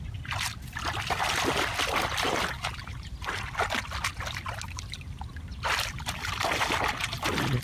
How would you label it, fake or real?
real